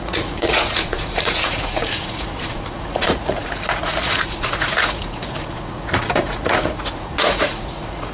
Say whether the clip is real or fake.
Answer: fake